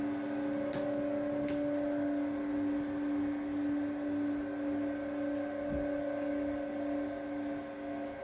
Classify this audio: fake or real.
real